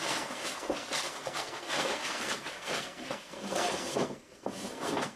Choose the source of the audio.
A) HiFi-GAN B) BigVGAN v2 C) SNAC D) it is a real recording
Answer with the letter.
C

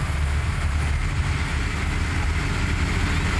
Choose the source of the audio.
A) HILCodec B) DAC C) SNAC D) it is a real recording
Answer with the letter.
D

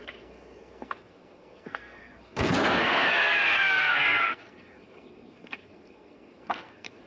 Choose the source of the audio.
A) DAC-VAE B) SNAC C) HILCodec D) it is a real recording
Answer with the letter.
B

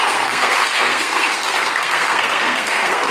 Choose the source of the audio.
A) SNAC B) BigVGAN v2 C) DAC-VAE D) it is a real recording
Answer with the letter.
A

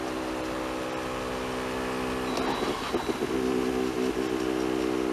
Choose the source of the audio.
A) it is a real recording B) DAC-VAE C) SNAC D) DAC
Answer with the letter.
A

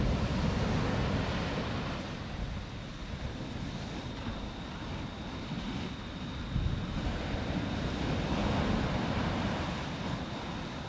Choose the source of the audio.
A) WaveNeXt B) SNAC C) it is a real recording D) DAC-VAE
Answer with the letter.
C